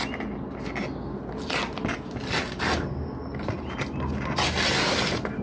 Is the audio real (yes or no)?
yes